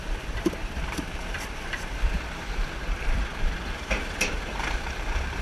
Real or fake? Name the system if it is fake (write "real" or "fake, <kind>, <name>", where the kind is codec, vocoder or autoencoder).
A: fake, vocoder, BigVGAN v2